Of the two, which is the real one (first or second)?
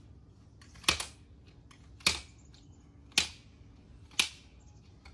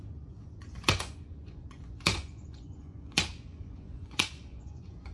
first